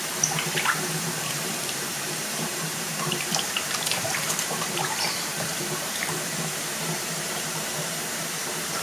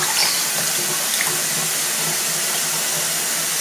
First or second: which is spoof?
first